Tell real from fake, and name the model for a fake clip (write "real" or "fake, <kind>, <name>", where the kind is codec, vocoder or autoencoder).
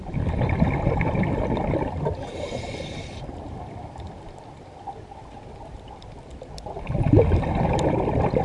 fake, vocoder, BigVGAN v2